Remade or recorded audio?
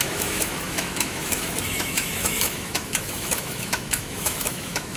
remade